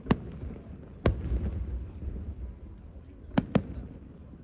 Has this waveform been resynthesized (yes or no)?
no